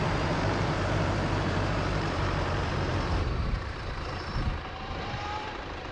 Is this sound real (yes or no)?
no